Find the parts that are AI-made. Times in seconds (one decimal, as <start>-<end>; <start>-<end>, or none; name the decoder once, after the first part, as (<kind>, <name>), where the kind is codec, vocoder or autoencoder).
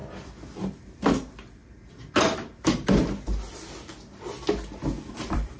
0.0-1.6 (vocoder, BigVGAN v2); 5.0-5.6